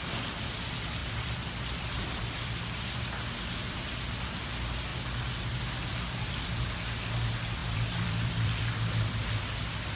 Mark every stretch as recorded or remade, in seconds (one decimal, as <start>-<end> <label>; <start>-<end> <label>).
0.0-1.0 recorded; 1.0-2.6 remade; 2.6-7.6 recorded; 7.6-10.0 remade